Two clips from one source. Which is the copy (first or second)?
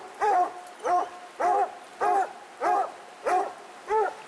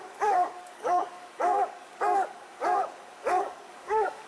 second